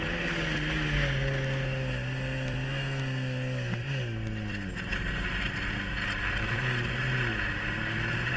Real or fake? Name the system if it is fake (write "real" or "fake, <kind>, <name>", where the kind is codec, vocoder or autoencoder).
real